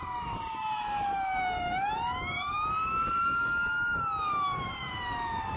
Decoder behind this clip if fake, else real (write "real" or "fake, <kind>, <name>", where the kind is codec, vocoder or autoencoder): fake, codec, DAC